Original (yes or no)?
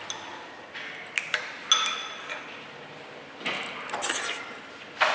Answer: yes